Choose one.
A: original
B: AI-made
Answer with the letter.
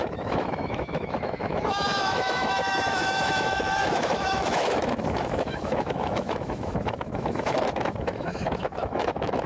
B